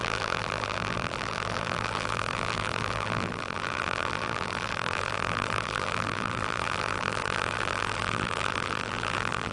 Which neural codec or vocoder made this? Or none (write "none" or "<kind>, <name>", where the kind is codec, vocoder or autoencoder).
vocoder, BigVGAN v2